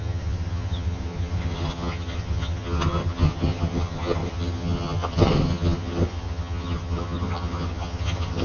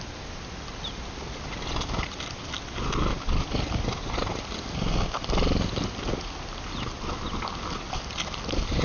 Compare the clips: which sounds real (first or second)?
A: second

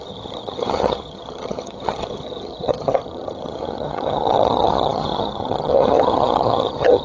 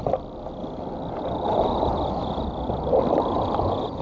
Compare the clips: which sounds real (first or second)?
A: second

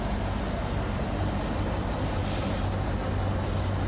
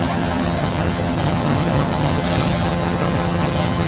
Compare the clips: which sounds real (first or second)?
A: first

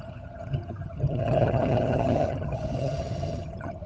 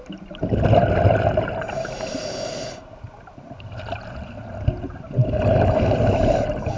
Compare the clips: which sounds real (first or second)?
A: second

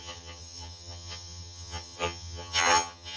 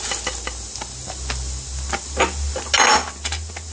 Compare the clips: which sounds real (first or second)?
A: second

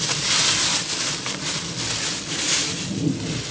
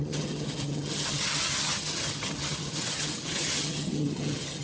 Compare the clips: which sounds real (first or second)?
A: first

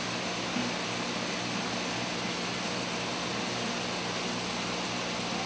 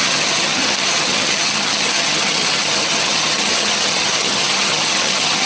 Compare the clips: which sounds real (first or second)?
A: first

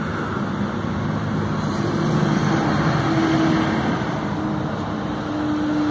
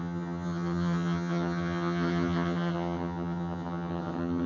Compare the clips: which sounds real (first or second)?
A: first